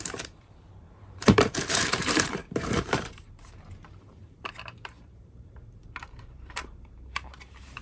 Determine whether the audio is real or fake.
fake